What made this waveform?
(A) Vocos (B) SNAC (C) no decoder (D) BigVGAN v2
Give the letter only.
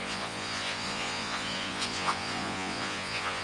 A